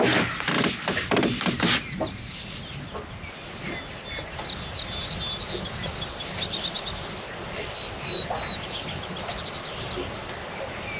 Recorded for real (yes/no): yes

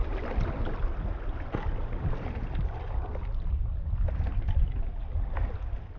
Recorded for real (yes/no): yes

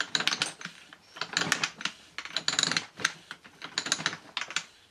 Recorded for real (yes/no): yes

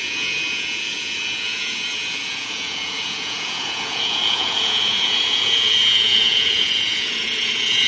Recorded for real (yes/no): no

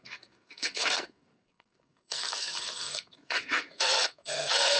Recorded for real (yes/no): no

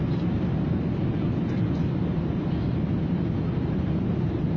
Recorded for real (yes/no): yes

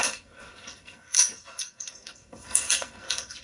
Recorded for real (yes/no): no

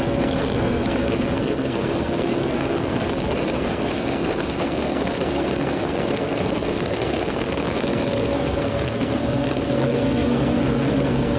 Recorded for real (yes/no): no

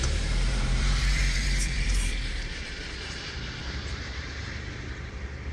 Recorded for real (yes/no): no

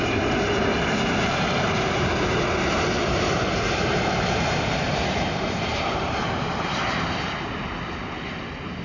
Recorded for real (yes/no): no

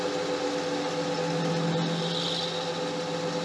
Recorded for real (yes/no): yes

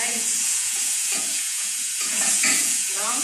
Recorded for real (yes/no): no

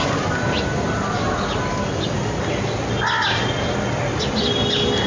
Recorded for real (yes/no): yes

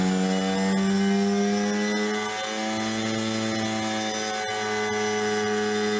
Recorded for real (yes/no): yes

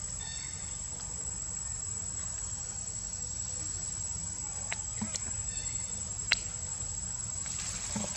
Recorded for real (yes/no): yes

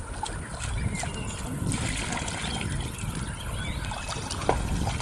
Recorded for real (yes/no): yes